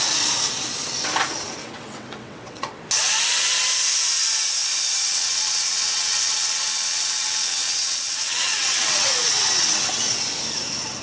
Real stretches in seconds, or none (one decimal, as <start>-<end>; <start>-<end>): 0.0-1.6; 2.8-5.1; 10.1-11.0

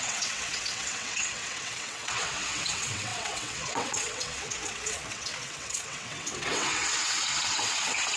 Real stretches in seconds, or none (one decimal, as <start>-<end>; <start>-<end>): none

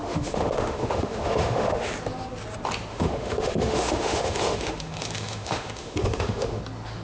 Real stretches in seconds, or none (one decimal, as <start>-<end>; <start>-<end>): 1.9-2.9; 6.6-7.0

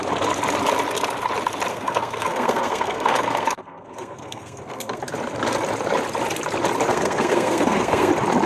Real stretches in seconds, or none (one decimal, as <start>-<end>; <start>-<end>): 0.0-1.7; 5.0-6.9; 8.1-8.5

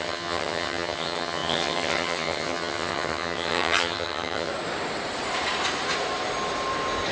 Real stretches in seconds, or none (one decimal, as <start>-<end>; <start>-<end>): 4.5-7.1